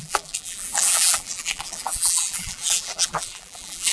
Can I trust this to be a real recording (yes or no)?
no